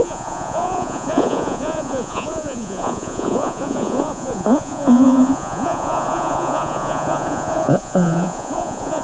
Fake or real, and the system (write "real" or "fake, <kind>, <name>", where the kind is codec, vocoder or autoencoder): fake, vocoder, Vocos